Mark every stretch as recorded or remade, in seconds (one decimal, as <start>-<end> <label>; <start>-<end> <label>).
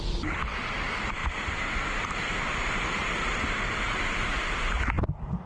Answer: 0.0-5.5 recorded